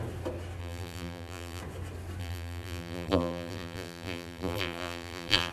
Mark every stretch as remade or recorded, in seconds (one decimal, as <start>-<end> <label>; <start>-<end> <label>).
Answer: 0.0-0.6 recorded; 0.6-1.6 remade; 1.6-2.2 recorded; 2.2-5.5 remade